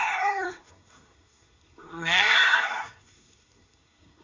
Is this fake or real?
fake